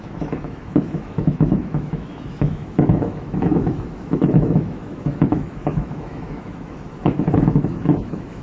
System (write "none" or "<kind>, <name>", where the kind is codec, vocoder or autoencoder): autoencoder, DAC-VAE